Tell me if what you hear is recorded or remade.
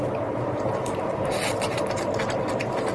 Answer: recorded